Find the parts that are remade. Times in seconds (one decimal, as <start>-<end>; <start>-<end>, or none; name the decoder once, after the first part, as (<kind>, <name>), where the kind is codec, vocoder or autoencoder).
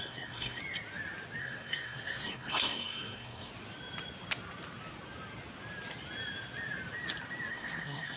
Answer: 0.0-0.6 (codec, SNAC); 1.4-3.5; 7.5-8.2